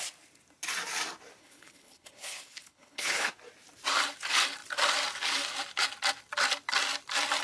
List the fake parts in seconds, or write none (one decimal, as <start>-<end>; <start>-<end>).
1.4-3.3